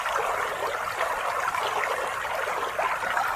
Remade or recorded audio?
recorded